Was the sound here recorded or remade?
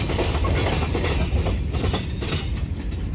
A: remade